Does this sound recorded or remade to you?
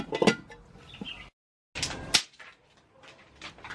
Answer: recorded